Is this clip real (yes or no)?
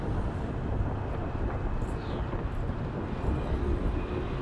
yes